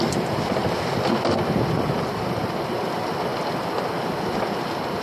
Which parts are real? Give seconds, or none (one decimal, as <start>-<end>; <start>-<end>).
0.0-5.0